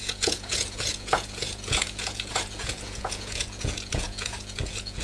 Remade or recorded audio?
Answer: remade